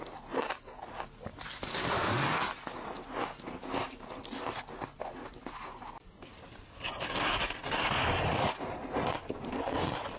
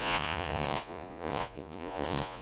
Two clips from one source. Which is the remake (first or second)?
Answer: second